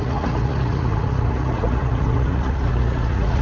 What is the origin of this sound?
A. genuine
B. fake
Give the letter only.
B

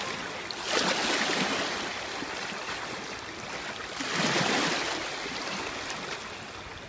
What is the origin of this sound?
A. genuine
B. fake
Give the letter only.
A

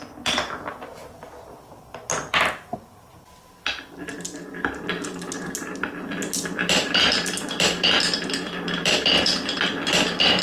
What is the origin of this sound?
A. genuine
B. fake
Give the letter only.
A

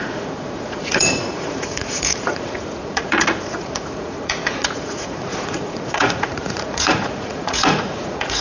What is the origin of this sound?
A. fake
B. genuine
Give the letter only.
A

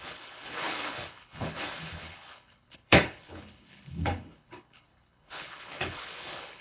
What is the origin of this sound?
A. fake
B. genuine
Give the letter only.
A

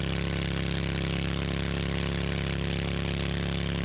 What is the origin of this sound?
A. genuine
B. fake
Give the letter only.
A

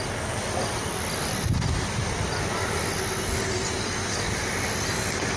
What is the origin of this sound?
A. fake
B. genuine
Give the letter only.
B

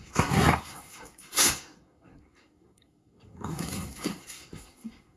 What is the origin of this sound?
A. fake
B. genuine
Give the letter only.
A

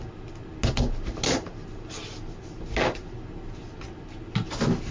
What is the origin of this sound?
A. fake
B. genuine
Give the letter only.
B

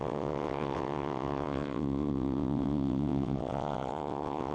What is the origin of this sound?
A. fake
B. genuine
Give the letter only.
A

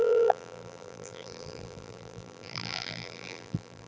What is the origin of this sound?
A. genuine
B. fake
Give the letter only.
B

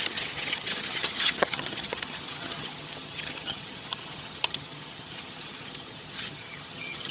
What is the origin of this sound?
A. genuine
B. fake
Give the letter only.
B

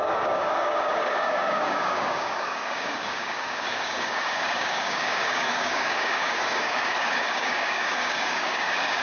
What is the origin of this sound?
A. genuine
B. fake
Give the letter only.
B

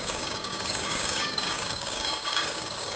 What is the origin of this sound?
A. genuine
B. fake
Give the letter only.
B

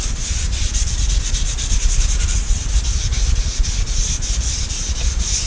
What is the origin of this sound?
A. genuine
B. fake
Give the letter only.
A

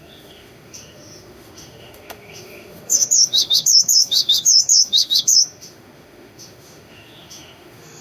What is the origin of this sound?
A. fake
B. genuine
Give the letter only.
A